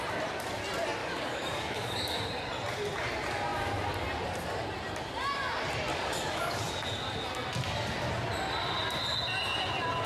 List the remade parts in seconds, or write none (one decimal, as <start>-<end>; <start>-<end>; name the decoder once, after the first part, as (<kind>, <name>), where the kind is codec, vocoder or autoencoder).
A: 1.0-2.2 (codec, DAC); 5.9-6.6